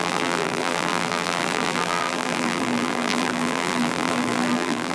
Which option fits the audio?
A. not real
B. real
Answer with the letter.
A